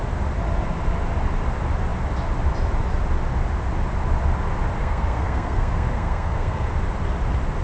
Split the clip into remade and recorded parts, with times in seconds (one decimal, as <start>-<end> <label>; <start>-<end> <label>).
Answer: 0.0-4.8 recorded; 4.8-6.7 remade; 6.7-7.6 recorded

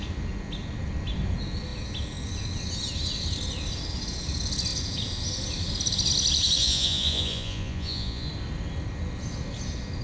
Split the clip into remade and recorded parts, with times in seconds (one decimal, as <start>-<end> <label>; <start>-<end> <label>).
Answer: 0.0-6.6 recorded; 6.6-8.3 remade; 8.3-10.0 recorded

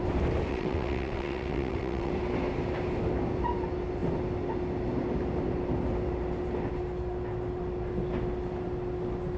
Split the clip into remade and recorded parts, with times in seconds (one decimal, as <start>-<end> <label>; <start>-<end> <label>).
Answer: 0.0-0.5 recorded; 0.5-2.1 remade; 2.1-9.4 recorded

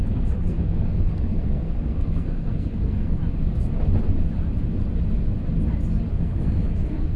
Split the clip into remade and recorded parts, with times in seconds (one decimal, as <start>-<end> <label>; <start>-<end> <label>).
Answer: 0.0-3.2 remade; 3.2-6.1 recorded; 6.1-7.2 remade